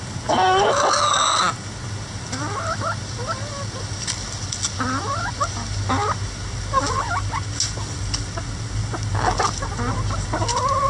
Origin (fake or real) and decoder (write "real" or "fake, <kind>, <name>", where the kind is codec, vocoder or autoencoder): real